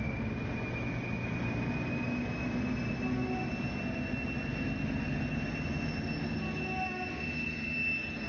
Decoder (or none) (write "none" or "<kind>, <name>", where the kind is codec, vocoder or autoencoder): none